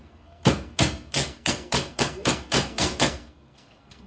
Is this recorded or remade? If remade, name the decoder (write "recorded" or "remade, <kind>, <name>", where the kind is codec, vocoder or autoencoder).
remade, codec, SNAC